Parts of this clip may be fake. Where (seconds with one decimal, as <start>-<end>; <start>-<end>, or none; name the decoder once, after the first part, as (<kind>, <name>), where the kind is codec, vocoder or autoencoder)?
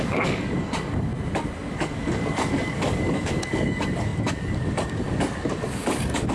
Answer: 0.0-1.1 (codec, DAC); 1.7-6.3